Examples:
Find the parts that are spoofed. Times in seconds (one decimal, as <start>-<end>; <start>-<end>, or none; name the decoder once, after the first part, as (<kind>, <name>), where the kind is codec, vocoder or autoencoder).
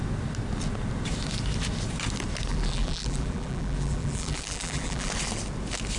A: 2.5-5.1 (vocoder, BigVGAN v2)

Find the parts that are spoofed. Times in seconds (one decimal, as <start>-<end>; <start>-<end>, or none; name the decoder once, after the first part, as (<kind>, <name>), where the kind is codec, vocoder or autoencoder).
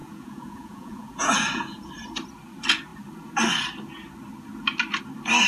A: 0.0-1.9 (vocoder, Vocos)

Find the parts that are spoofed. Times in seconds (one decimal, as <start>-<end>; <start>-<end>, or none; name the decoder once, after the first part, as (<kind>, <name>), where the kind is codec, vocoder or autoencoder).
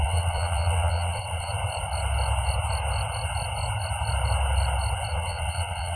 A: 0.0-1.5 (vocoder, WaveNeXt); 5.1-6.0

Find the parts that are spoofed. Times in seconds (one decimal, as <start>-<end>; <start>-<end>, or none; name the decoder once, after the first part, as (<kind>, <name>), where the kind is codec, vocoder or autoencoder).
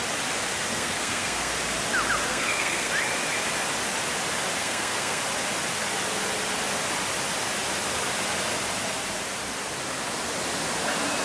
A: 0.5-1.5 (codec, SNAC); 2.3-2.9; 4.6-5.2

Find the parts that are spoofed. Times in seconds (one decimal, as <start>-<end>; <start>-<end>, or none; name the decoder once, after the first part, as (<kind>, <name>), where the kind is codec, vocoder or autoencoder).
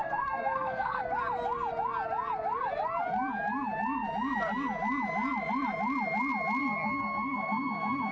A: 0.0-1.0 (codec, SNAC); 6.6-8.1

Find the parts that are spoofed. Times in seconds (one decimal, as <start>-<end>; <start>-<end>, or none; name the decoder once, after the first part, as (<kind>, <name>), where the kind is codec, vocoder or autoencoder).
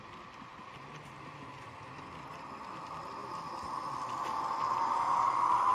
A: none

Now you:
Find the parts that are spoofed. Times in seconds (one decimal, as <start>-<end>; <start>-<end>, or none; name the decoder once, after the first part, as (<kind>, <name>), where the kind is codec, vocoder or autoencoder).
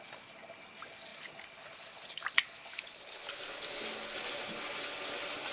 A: none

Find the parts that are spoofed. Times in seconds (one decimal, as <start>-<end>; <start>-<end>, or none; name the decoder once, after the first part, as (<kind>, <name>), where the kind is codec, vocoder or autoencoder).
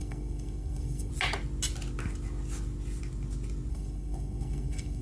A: 0.0-1.1 (codec, SNAC); 3.7-5.0